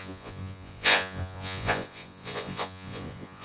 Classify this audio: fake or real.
fake